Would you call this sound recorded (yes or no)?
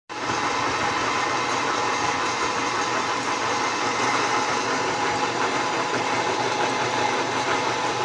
yes